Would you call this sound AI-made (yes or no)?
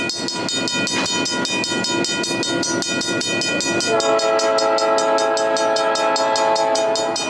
no